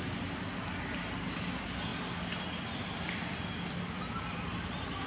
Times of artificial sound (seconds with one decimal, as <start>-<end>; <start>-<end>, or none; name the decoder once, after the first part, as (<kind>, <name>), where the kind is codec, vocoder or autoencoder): none